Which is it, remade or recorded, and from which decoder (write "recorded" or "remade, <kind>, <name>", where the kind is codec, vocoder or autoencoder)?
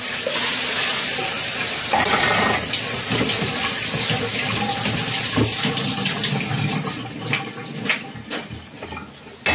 recorded